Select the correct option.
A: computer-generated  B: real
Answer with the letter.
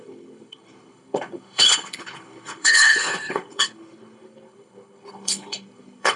A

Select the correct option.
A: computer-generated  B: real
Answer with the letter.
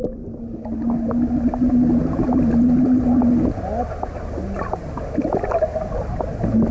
B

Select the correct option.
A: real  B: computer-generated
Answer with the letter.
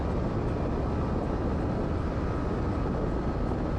A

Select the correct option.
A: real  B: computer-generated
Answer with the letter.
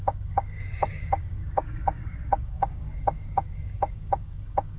B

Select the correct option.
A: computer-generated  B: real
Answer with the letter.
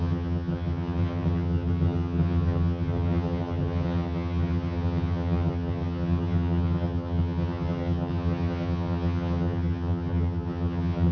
A